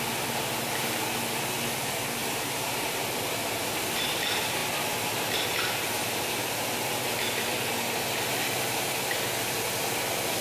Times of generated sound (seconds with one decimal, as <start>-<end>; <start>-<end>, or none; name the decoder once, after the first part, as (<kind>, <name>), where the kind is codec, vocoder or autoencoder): 2.2-3.0 (vocoder, BigVGAN v2)